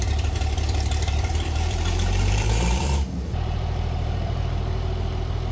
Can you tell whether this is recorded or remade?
remade